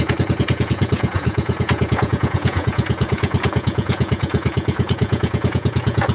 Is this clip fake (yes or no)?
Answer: yes